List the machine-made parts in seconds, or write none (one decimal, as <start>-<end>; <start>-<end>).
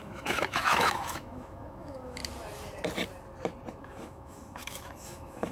0.0-2.2; 3.7-5.5